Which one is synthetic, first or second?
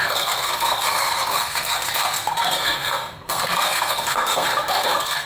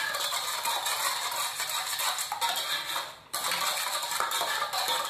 first